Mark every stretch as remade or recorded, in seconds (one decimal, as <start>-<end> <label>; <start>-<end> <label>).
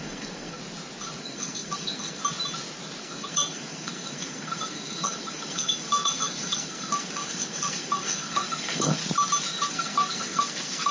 0.0-0.6 remade; 0.6-1.2 recorded; 1.2-2.2 remade; 2.2-3.0 recorded; 3.0-9.0 remade; 9.0-9.7 recorded; 9.7-10.9 remade